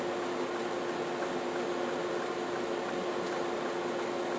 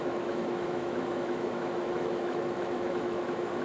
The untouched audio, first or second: first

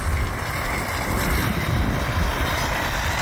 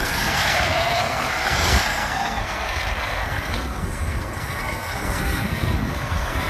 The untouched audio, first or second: first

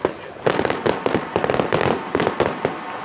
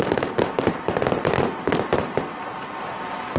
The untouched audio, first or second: first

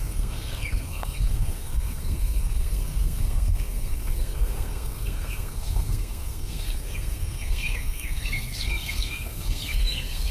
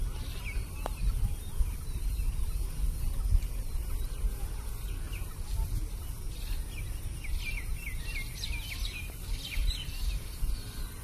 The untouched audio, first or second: second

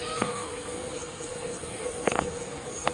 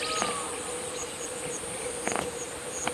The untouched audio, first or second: second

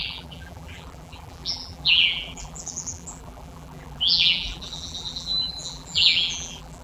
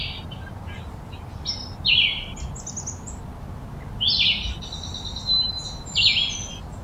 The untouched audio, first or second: second